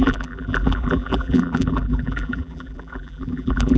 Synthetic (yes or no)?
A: yes